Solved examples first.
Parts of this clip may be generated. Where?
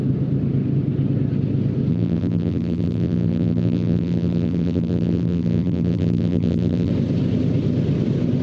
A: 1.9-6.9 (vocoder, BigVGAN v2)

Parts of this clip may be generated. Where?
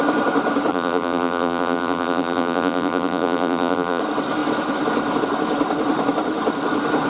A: 0.7-4.0 (vocoder, BigVGAN v2)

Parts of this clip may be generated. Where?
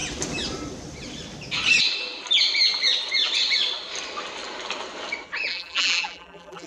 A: 5.5-6.7 (vocoder, BigVGAN v2)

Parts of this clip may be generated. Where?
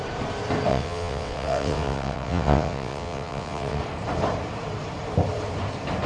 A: 0.7-3.8 (vocoder, WaveNeXt)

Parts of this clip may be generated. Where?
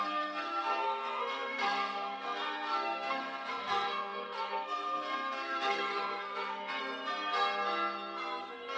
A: 0.0-6.8 (codec, SNAC); 8.4-8.8